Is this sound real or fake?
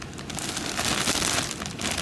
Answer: real